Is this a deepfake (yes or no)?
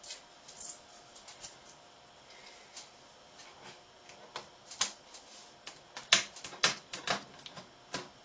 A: no